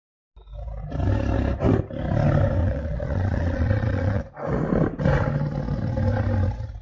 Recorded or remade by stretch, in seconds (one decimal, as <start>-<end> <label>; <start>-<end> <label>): 0.0-2.6 recorded; 2.6-4.2 remade; 4.2-6.8 recorded